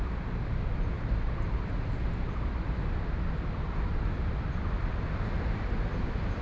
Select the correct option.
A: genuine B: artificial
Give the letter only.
A